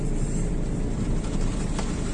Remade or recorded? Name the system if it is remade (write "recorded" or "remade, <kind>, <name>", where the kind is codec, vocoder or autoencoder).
remade, vocoder, BigVGAN v2